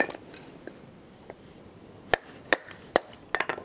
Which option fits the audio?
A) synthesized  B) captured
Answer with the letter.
B